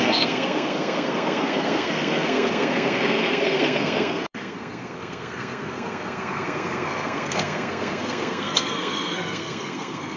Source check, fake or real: fake